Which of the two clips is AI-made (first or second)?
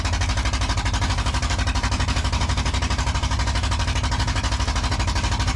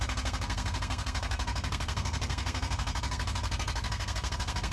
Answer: second